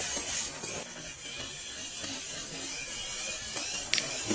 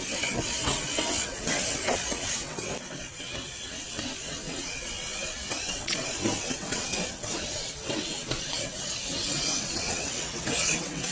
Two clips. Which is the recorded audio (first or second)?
first